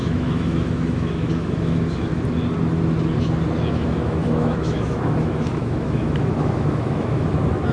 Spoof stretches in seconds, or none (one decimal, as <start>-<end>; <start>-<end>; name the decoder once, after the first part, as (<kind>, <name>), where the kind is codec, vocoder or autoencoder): 0.0-2.1 (autoencoder, DAC-VAE); 3.7-7.7